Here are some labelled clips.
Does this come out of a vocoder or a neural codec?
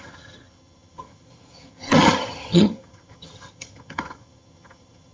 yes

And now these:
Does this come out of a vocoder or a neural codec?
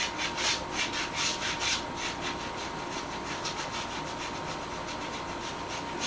no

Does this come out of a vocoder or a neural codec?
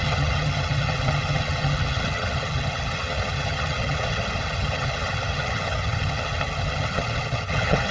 yes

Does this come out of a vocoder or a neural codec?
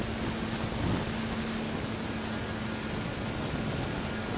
no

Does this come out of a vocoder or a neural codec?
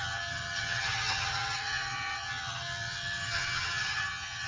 yes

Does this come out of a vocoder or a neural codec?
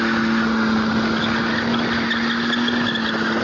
no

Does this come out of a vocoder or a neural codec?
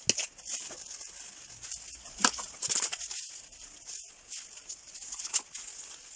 no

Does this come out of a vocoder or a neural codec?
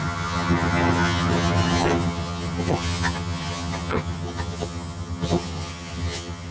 yes